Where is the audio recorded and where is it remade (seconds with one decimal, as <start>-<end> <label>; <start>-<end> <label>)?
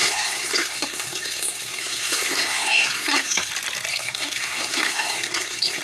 0.0-3.5 remade; 3.5-3.9 recorded; 3.9-5.8 remade